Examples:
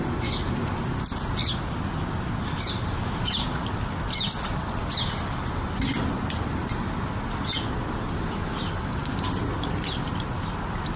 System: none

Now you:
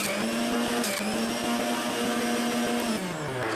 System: none